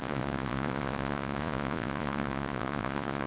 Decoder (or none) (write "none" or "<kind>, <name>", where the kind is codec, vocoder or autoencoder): vocoder, Vocos